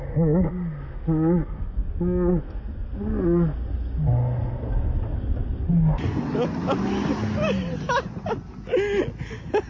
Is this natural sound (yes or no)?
yes